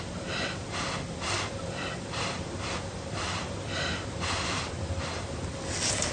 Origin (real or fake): fake